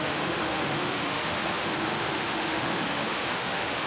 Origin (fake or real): fake